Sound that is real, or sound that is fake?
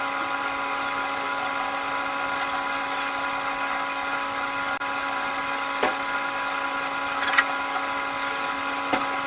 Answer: real